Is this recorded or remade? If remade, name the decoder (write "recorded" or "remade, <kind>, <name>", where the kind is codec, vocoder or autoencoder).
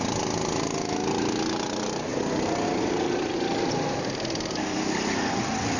recorded